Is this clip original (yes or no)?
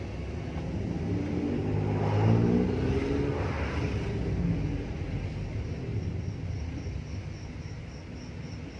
yes